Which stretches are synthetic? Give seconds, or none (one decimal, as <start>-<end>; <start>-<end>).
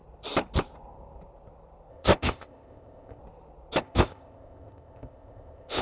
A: 1.9-3.2; 3.8-5.8